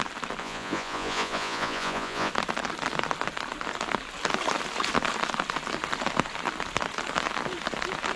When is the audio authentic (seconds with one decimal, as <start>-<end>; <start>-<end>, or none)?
0.0-0.4; 2.3-8.2